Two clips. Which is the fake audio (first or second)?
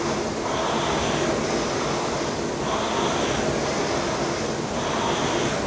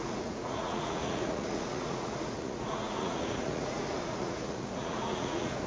second